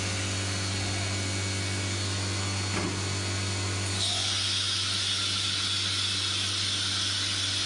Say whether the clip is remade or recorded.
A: recorded